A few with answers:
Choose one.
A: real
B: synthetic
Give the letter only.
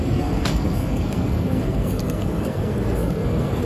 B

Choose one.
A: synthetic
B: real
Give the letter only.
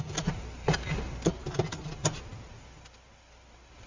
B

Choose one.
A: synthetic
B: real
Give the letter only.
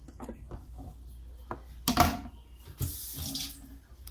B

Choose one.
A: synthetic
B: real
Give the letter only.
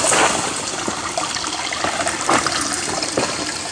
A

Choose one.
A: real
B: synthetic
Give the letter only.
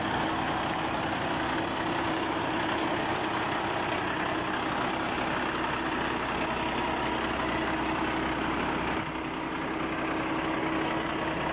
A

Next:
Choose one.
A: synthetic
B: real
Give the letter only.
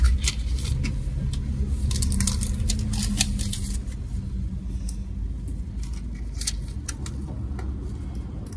B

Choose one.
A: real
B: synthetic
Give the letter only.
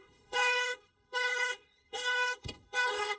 B